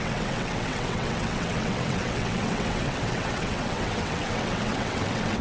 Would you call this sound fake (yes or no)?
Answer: yes